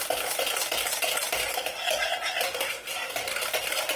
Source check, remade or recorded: recorded